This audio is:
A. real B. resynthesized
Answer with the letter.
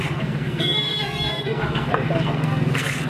B